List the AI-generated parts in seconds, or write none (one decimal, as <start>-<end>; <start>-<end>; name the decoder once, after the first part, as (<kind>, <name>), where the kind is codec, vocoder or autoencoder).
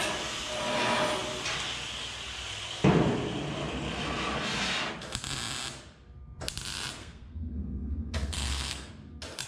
7.0-8.9 (codec, SNAC)